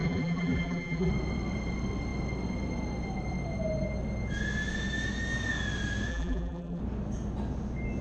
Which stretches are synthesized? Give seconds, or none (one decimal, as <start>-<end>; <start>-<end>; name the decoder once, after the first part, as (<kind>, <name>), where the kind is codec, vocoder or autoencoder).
0.0-1.1 (vocoder, BigVGAN v2); 6.1-6.8